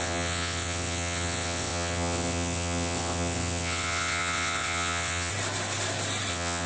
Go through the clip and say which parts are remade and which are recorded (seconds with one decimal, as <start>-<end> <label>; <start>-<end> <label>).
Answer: 0.0-5.3 remade; 5.3-6.3 recorded; 6.3-6.7 remade